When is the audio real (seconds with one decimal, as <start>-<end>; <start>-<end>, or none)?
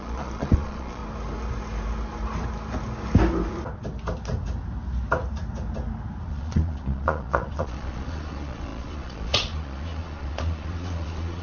1.0-6.3